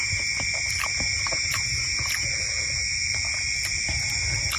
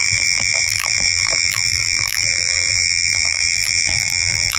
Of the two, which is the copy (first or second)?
second